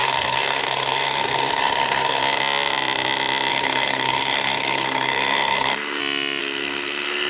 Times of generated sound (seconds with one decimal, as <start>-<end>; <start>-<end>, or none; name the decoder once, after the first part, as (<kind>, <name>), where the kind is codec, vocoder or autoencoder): 0.0-2.2 (codec, SNAC); 3.5-6.0; 6.4-7.3